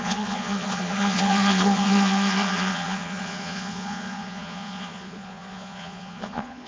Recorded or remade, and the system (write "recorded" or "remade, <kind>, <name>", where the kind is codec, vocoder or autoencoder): remade, vocoder, Vocos